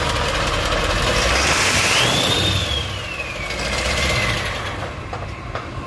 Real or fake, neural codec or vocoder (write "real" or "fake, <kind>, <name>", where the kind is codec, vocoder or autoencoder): real